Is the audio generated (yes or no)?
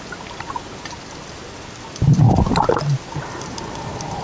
no